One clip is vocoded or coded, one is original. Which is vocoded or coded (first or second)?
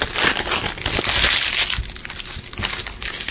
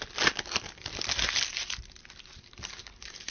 second